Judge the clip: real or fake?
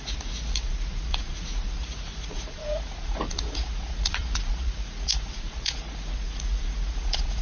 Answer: fake